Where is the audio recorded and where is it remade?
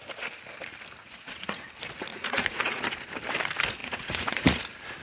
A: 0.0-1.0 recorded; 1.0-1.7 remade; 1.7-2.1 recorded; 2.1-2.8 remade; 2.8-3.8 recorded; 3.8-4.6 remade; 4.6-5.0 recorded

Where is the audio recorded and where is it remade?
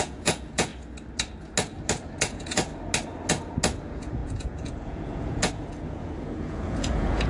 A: 0.0-0.7 remade; 0.7-2.2 recorded; 2.2-2.7 remade; 2.7-3.8 recorded; 3.8-7.3 remade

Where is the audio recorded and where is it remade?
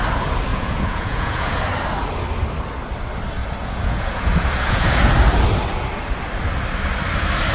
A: 0.0-0.5 recorded; 0.5-1.7 remade; 1.7-3.4 recorded; 3.4-4.9 remade; 4.9-7.5 recorded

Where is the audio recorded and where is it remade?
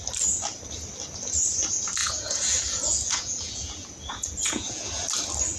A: 0.0-2.0 recorded; 2.0-4.9 remade; 4.9-5.6 recorded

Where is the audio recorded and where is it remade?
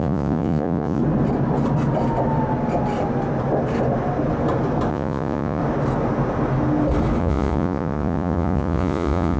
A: 0.0-1.0 remade; 1.0-4.9 recorded; 4.9-5.6 remade; 5.6-7.2 recorded; 7.2-9.4 remade